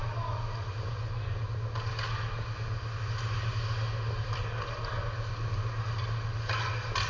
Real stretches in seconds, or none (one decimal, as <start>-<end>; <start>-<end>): 0.0-7.1